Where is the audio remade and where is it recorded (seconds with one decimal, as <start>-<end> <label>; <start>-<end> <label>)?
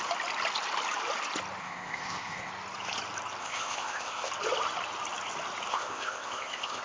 0.0-1.6 recorded; 1.6-2.5 remade; 2.5-3.4 recorded; 3.4-4.3 remade; 4.3-5.7 recorded; 5.7-6.8 remade